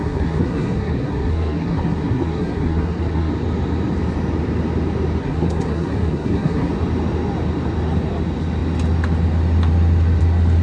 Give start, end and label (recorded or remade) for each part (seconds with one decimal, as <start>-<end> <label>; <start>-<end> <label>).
0.0-3.3 remade; 3.3-5.2 recorded; 5.2-6.7 remade; 6.7-10.6 recorded